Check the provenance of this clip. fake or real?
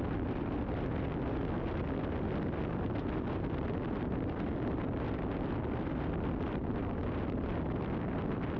real